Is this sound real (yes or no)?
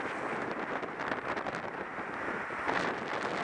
yes